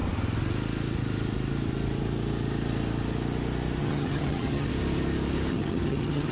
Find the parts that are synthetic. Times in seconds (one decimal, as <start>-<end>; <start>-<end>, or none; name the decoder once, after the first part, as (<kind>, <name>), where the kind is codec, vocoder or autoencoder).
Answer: 3.8-4.7 (vocoder, HiFi-GAN); 5.5-6.3